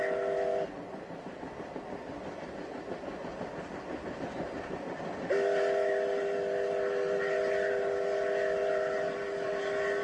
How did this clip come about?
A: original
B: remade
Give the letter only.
A